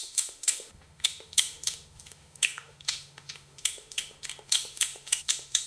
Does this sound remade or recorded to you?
remade